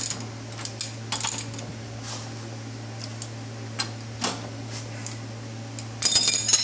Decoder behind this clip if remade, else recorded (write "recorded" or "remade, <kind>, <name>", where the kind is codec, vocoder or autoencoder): recorded